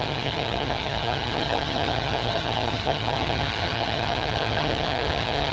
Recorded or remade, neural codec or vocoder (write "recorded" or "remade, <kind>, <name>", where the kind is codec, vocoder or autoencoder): remade, vocoder, HiFi-GAN